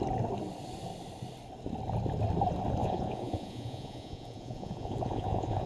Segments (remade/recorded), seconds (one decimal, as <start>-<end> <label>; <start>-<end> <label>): 0.0-2.8 recorded; 2.8-5.7 remade

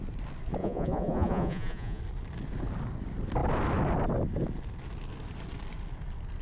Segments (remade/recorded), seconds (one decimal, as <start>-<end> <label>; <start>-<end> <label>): 0.0-0.6 recorded; 0.6-2.0 remade; 2.0-6.4 recorded

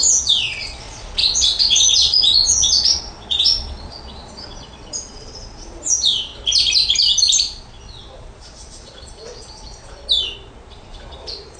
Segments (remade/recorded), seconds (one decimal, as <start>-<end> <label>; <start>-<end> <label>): 0.0-6.3 remade; 6.3-7.4 recorded; 7.4-10.0 remade; 10.0-10.7 recorded; 10.7-11.6 remade

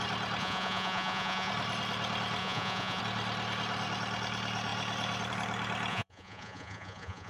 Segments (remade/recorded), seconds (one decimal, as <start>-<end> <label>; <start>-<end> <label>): 0.0-0.4 recorded; 0.4-1.5 remade; 1.5-2.4 recorded; 2.4-3.0 remade; 3.0-5.9 recorded; 5.9-7.3 remade

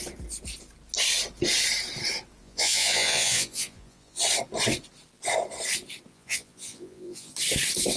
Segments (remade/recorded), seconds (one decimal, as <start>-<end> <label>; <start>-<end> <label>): 0.0-2.4 recorded; 2.4-4.2 remade; 4.2-6.1 recorded; 6.1-7.3 remade; 7.3-8.0 recorded

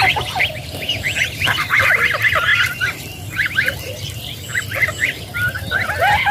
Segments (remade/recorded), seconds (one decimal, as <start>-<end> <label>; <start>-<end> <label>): 0.0-6.3 recorded

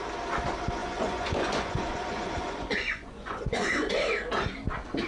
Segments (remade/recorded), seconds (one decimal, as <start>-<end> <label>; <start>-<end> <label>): 0.0-0.8 recorded; 0.8-3.9 remade; 3.9-5.1 recorded